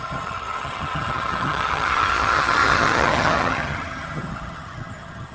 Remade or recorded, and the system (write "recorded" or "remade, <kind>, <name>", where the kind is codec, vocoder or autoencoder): remade, vocoder, HiFi-GAN